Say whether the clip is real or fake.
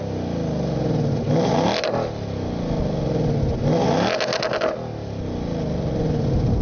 real